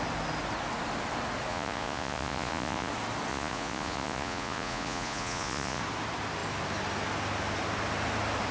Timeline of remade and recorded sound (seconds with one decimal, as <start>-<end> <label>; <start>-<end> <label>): 0.0-1.5 recorded; 1.5-2.9 remade; 2.9-3.3 recorded; 3.3-5.8 remade; 5.8-8.5 recorded